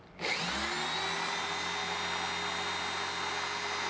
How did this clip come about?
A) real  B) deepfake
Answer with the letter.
A